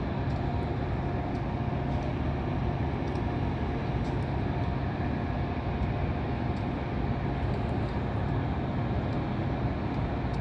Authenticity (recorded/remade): recorded